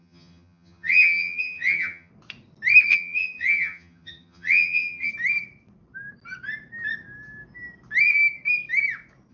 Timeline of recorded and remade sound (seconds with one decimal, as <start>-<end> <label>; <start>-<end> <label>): 0.0-2.1 remade; 2.1-2.9 recorded; 2.9-5.1 remade; 5.1-9.3 recorded